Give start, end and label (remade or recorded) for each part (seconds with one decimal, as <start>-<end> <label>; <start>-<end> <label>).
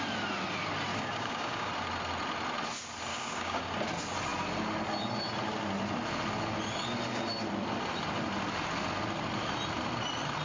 0.0-0.9 recorded; 0.9-1.7 remade; 1.7-3.1 recorded; 3.1-3.7 remade; 3.7-10.4 recorded